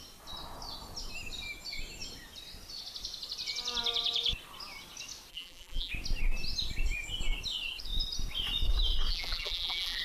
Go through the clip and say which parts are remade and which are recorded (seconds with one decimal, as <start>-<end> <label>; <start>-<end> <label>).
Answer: 0.0-5.3 recorded; 5.3-5.9 remade; 5.9-9.1 recorded; 9.1-10.0 remade